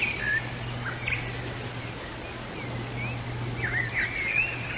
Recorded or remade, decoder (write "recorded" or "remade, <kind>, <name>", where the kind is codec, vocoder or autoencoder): recorded